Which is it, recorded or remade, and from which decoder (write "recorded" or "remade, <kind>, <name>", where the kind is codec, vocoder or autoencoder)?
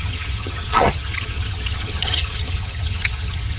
remade, vocoder, HiFi-GAN